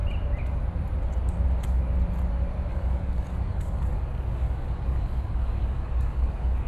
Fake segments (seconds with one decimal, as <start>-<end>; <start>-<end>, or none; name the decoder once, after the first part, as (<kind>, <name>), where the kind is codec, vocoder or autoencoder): 2.7-6.7 (codec, DAC)